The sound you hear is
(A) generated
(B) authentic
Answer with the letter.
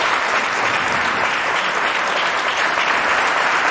A